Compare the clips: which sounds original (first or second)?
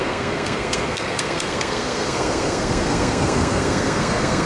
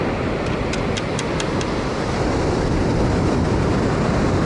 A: second